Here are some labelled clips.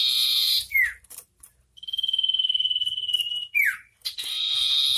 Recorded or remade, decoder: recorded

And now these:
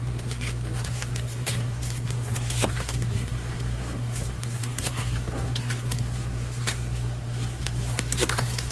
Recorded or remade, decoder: remade, codec, SNAC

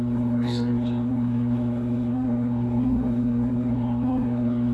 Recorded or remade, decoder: remade, codec, SNAC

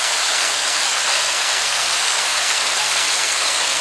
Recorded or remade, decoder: remade, codec, SNAC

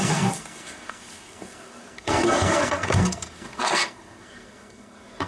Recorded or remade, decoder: remade, codec, SNAC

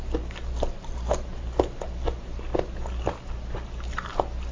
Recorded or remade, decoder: recorded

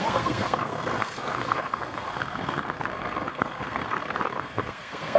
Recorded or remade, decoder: remade, codec, SNAC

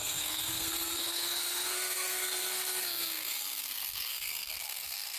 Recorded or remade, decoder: remade, codec, SNAC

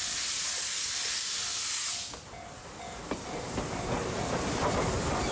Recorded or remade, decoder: recorded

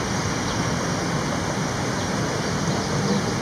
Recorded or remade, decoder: recorded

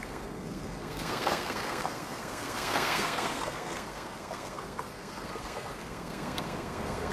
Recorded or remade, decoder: remade, codec, SNAC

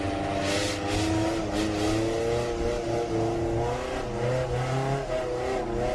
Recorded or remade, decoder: recorded